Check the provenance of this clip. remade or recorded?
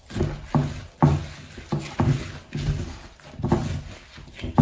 recorded